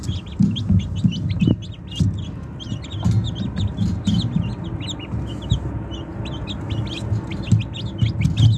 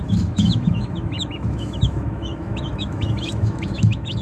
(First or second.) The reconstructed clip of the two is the second